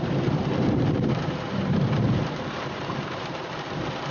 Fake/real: fake